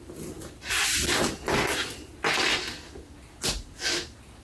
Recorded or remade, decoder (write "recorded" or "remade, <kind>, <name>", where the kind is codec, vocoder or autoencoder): recorded